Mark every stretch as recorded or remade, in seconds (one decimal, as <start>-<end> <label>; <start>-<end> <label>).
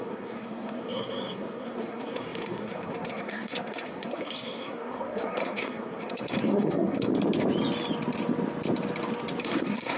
0.0-7.1 remade; 7.1-9.4 recorded; 9.4-10.0 remade